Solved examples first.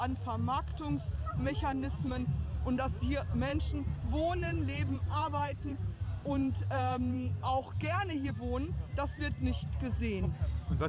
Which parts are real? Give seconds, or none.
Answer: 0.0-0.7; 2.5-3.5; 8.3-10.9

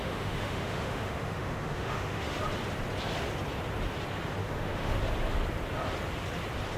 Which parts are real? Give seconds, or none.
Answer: 2.4-4.4; 5.0-6.8

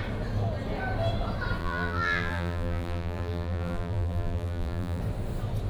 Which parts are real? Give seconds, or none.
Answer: 0.0-1.6; 5.0-5.7

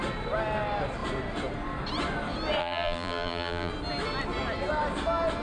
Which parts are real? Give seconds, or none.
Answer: 0.0-2.6; 3.7-5.4

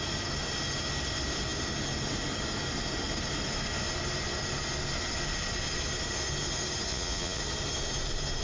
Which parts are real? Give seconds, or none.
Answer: 0.0-6.9; 7.4-8.4